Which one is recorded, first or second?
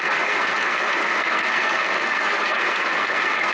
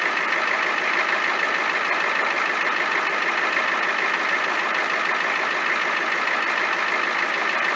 second